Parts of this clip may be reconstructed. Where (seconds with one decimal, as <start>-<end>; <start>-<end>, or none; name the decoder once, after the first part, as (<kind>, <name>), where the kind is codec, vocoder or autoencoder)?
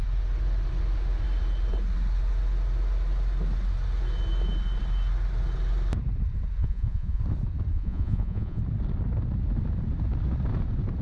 6.6-7.2 (vocoder, Vocos); 7.7-8.6